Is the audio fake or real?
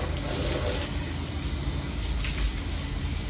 real